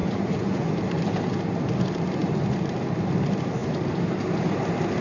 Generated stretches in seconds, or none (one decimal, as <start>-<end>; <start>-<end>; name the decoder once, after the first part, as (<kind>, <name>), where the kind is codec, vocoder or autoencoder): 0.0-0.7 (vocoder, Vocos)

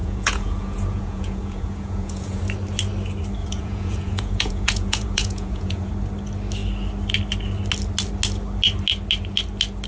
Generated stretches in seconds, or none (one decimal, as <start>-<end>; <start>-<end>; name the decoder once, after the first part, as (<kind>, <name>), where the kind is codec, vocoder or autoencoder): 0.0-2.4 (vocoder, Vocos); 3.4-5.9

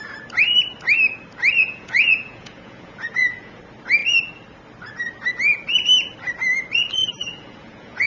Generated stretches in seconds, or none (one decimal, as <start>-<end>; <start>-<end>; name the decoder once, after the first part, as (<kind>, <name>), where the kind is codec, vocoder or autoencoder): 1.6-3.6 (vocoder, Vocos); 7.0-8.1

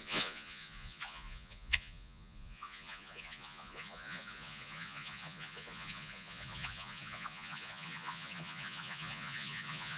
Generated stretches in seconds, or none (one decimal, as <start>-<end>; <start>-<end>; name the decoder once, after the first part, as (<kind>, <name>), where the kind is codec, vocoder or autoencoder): 0.0-10.0 (vocoder, Vocos)